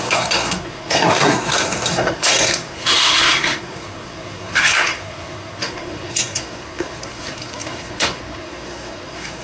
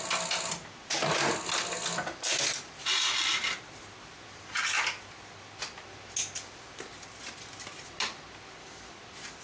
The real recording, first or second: second